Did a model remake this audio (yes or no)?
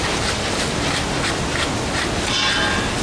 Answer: yes